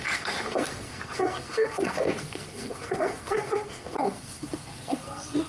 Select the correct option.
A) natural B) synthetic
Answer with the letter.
B